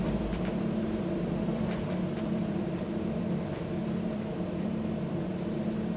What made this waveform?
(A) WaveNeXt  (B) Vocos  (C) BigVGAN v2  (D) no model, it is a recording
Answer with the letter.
C